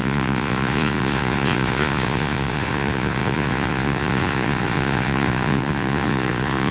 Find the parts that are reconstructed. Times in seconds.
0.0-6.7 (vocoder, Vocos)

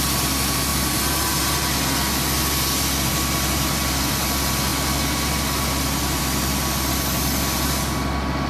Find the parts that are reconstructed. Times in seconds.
none

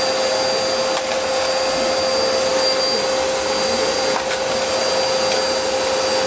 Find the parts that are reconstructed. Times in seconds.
none

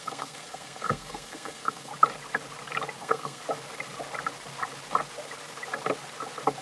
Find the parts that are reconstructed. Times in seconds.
0.0-1.9 (codec, SNAC); 3.0-3.4

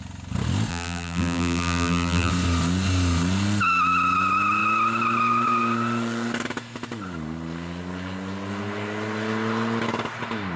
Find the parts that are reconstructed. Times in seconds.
0.7-2.3 (vocoder, BigVGAN v2)

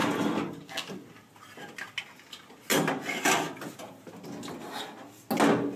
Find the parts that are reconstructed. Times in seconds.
none

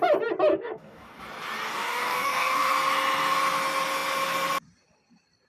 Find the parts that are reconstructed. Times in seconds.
0.5-1.2 (codec, DAC); 1.7-2.7

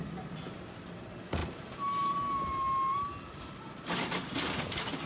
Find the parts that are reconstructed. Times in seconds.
none